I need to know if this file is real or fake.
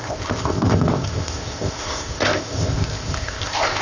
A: fake